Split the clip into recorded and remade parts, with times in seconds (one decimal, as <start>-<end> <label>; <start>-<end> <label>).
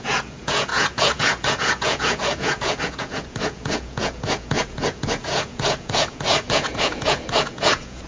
0.0-8.1 remade